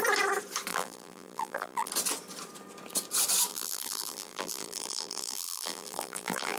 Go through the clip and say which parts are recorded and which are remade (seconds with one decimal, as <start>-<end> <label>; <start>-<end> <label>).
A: 0.0-0.7 recorded; 0.7-1.9 remade; 1.9-3.5 recorded; 3.5-6.6 remade